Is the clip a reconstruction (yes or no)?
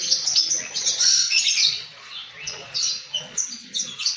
yes